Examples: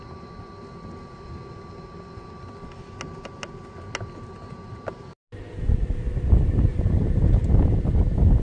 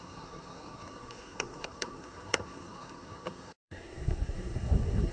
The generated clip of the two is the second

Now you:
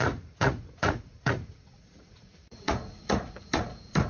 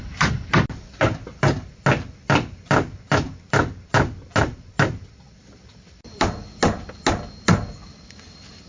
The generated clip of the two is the first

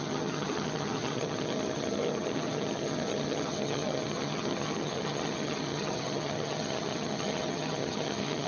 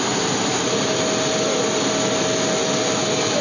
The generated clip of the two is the first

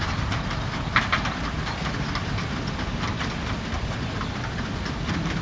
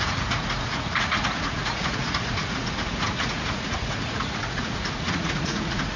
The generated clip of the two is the second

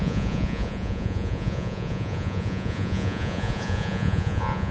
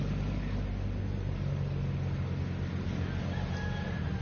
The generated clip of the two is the first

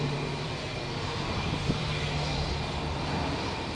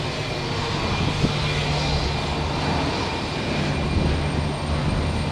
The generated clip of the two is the first